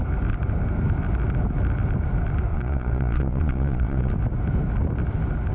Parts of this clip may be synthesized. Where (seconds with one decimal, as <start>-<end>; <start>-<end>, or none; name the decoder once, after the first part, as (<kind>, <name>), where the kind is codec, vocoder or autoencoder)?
2.5-4.1 (vocoder, Vocos)